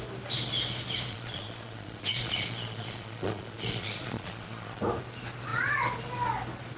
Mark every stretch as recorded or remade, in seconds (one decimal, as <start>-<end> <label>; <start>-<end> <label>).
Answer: 0.0-1.1 recorded; 1.1-4.8 remade; 4.8-6.8 recorded